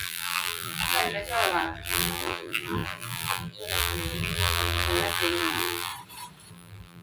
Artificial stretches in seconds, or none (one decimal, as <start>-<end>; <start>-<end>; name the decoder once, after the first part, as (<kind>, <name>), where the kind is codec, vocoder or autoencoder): 0.0-5.9 (vocoder, BigVGAN v2); 6.5-7.0